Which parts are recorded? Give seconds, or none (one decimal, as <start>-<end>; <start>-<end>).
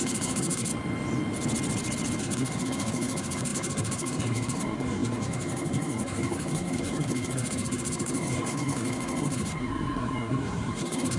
0.7-2.2